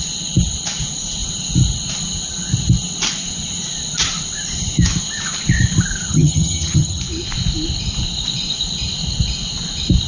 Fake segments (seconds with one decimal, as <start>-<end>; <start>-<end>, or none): 6.1-7.0